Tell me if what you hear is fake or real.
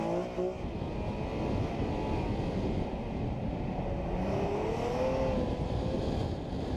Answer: real